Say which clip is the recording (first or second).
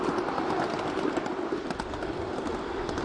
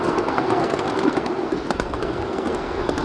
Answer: first